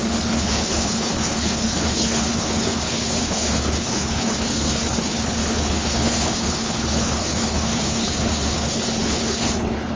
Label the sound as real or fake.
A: fake